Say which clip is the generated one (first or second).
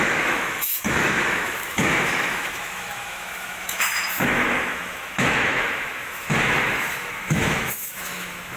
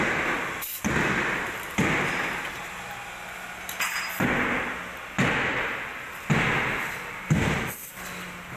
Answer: first